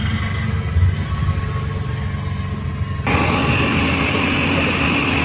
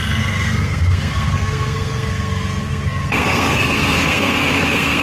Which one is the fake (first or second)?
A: second